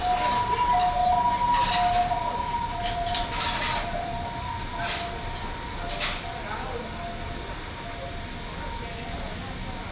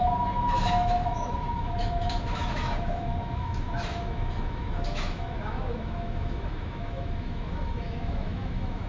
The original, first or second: first